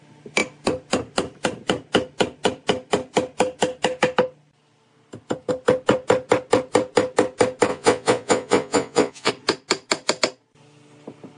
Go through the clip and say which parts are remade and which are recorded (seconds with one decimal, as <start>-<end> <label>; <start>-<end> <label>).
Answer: 0.0-7.7 recorded; 7.7-9.3 remade; 9.3-11.4 recorded